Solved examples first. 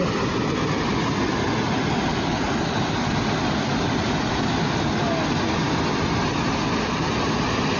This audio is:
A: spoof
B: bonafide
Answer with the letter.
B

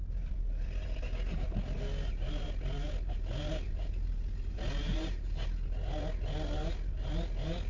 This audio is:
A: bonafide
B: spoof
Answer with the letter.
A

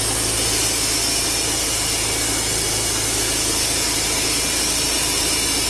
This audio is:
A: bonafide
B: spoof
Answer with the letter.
A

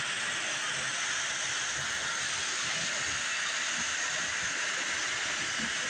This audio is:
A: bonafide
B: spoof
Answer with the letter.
A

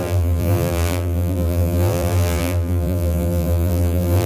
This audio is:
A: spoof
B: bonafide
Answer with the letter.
A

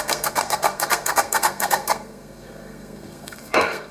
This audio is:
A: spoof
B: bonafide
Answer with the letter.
A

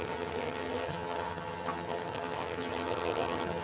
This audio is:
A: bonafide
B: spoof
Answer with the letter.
B